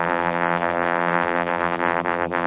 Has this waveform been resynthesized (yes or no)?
yes